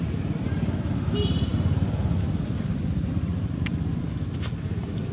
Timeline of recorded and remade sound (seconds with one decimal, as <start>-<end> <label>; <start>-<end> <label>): 0.0-5.1 recorded